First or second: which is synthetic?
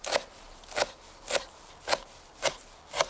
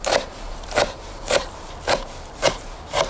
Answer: second